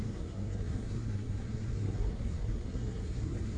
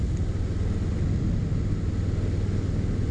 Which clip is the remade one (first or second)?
first